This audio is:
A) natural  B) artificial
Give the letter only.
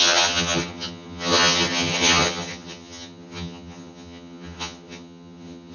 B